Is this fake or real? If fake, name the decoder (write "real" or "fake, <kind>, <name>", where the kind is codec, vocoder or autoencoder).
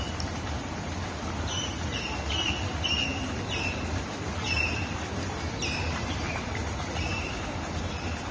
real